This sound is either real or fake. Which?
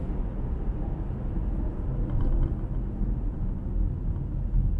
real